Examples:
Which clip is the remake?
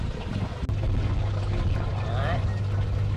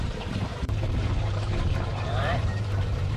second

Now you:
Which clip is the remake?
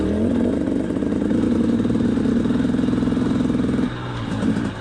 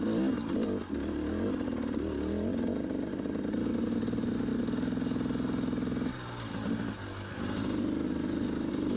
first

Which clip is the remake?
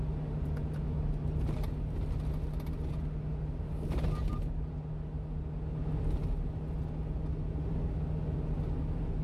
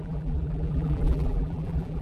second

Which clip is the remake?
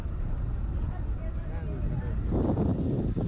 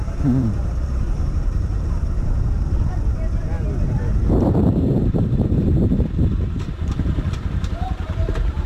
second